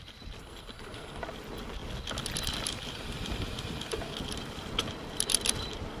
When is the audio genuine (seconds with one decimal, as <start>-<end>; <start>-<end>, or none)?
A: 0.0-0.4; 1.2-6.0

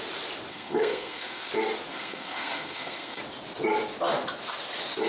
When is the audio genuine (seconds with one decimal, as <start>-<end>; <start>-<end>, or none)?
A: 0.0-0.5; 1.5-1.9; 3.2-5.1

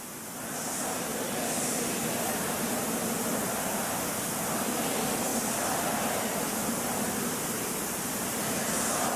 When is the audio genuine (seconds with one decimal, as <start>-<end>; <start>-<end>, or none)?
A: 0.0-9.2

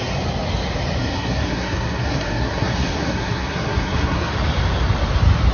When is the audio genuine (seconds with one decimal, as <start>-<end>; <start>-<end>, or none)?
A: 0.0-1.0; 4.3-5.5

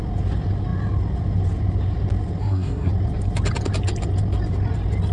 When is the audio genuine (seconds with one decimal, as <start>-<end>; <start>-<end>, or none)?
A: 0.0-2.4; 2.9-5.1

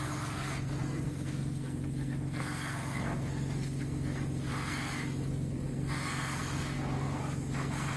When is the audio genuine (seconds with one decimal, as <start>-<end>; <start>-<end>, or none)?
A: none